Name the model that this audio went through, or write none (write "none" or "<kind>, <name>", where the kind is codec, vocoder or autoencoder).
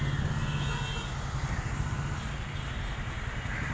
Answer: none